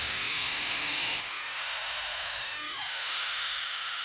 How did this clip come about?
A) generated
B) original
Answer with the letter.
A